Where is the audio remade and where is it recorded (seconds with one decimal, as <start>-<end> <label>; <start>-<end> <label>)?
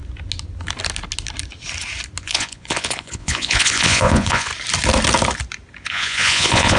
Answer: 0.0-2.2 recorded; 2.2-4.5 remade; 4.5-5.8 recorded; 5.8-6.8 remade